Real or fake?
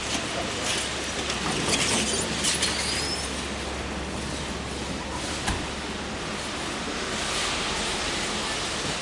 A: real